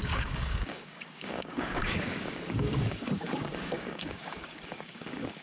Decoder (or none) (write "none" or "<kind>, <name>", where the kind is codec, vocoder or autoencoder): codec, DAC